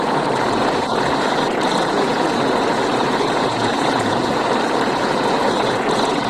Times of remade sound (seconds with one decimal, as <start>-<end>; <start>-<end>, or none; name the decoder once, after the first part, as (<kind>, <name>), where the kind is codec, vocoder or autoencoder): 0.0-6.3 (vocoder, Vocos)